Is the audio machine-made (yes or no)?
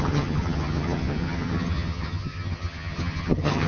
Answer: yes